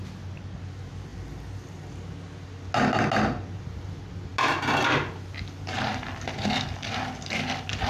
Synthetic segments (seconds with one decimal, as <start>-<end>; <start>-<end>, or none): none